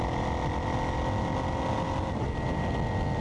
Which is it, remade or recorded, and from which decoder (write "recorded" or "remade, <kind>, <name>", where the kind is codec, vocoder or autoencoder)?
recorded